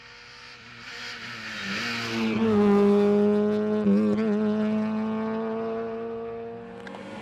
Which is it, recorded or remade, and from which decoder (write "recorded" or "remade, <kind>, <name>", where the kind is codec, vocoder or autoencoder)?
recorded